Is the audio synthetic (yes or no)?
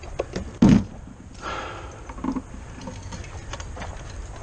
no